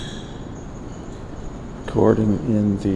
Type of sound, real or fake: real